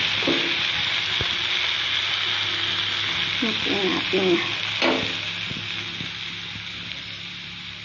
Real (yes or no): yes